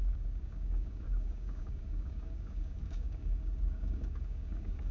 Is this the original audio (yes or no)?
no